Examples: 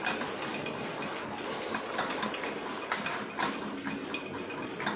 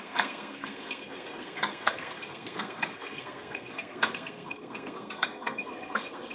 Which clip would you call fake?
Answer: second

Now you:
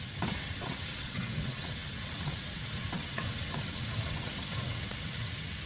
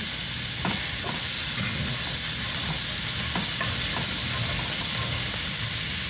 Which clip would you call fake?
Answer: first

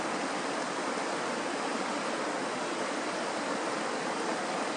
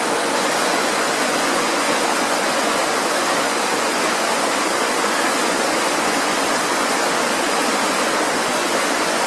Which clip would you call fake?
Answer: second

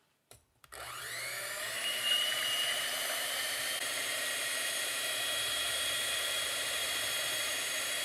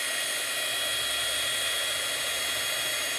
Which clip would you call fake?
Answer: first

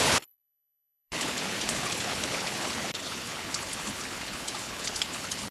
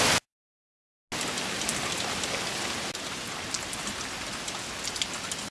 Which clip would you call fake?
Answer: first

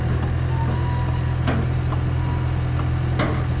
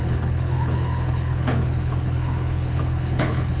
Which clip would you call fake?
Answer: second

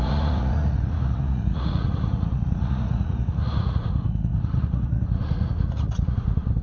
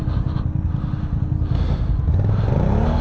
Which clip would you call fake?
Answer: first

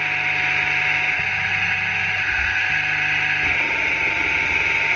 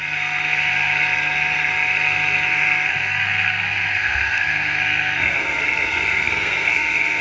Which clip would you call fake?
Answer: second